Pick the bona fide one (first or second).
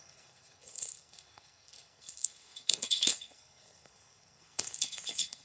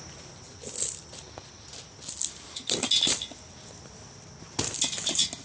second